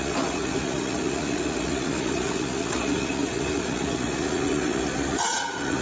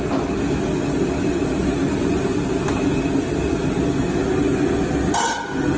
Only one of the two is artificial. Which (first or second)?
first